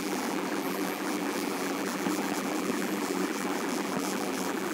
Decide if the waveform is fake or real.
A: fake